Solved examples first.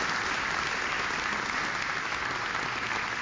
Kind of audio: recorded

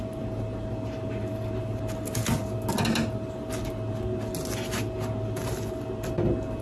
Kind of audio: recorded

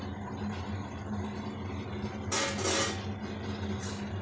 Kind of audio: recorded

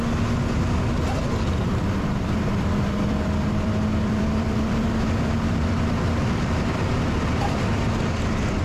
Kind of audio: remade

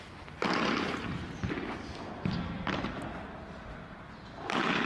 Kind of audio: recorded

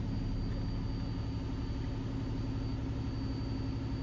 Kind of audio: recorded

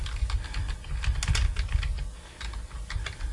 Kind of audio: recorded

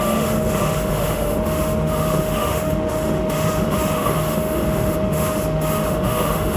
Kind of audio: remade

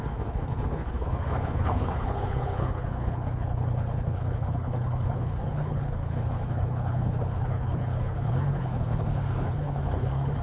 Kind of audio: remade